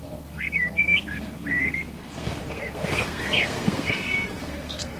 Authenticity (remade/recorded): remade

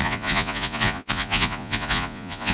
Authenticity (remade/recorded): remade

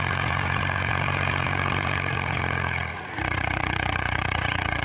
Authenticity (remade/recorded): remade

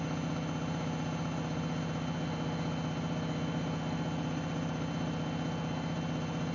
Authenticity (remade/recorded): recorded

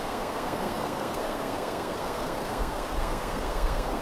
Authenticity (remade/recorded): remade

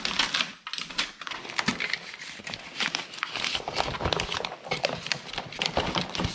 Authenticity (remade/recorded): recorded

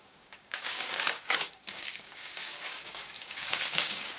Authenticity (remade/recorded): remade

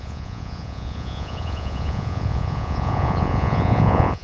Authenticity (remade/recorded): remade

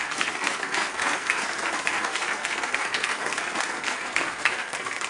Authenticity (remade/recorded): remade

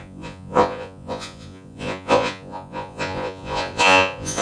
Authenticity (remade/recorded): remade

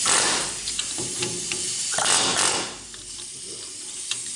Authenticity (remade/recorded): remade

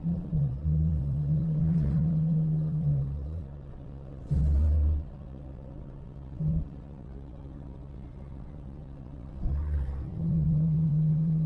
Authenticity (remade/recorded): remade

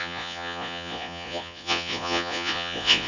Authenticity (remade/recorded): remade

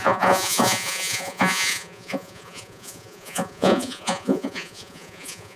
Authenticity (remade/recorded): remade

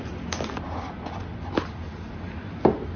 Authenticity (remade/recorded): recorded